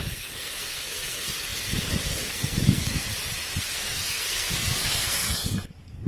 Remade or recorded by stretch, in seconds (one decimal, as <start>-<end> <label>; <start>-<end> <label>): 0.0-3.1 remade; 3.1-3.6 recorded; 3.6-6.1 remade